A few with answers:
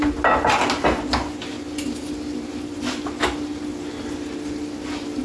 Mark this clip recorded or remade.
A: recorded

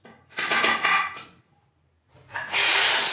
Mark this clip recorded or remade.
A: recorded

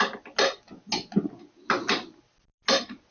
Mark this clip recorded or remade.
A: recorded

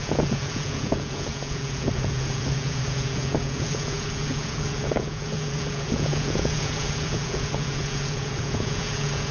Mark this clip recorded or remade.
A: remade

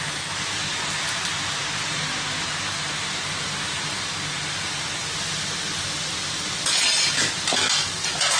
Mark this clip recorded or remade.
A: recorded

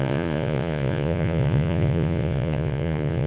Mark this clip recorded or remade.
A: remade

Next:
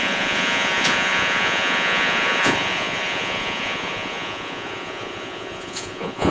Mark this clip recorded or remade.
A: remade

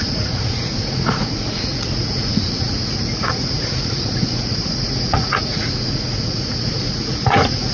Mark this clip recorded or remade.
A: remade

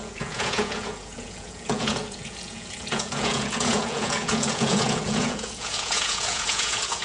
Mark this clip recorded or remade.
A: remade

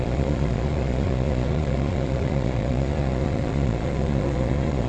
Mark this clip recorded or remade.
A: remade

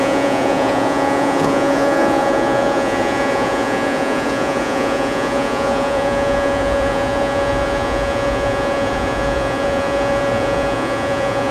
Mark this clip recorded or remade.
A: remade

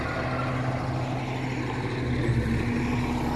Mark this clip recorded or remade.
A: recorded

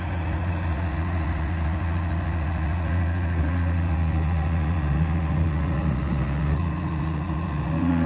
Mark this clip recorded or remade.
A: remade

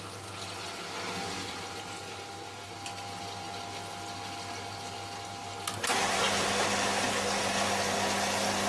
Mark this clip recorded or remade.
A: recorded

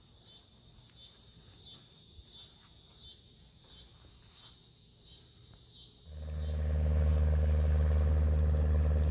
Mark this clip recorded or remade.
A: recorded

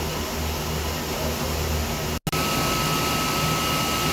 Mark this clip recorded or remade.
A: recorded